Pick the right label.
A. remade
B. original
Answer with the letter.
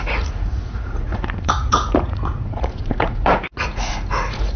A